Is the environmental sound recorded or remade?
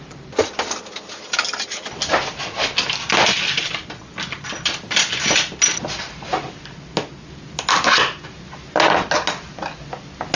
recorded